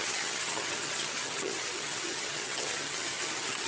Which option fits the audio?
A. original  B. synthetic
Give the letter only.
B